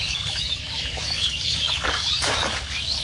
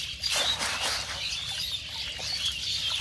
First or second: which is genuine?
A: second